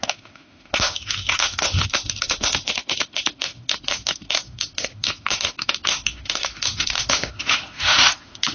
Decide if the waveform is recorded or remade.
remade